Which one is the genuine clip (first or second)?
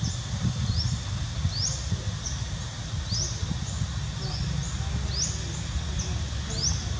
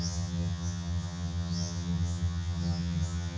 first